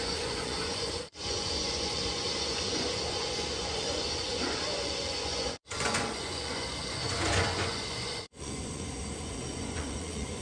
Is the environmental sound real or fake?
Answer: fake